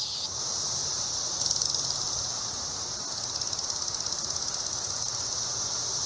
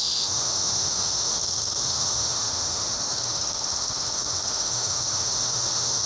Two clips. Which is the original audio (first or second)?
first